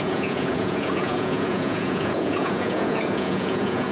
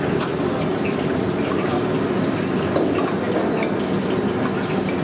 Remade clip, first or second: first